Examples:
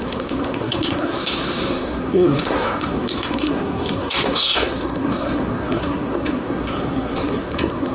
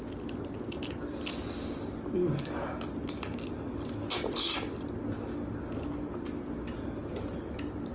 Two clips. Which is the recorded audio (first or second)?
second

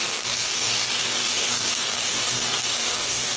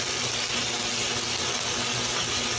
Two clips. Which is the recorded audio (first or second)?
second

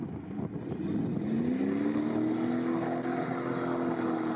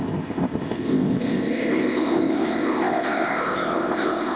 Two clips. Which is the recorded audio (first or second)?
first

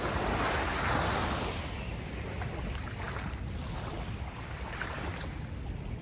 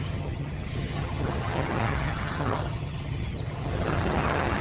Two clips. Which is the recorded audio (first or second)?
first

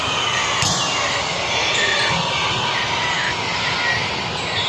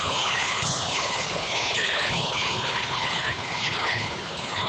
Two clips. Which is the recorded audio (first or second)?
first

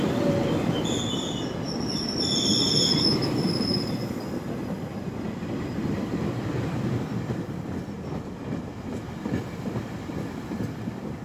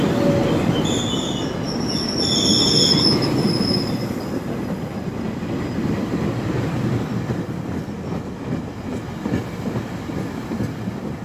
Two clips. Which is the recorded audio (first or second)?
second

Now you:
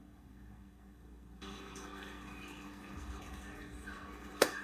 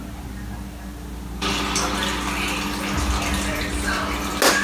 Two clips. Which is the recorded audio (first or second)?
second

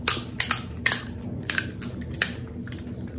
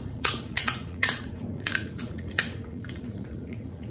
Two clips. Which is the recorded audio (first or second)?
first